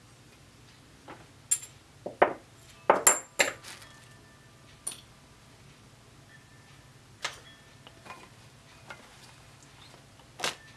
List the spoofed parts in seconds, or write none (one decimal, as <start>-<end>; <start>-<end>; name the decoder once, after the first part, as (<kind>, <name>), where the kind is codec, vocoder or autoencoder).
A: none